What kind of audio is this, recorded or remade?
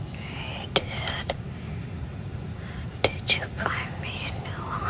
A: recorded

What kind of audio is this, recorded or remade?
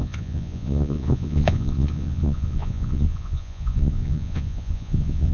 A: remade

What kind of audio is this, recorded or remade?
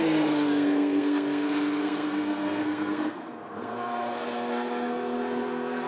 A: remade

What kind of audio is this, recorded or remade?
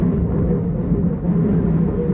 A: recorded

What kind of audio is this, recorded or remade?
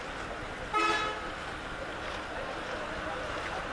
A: recorded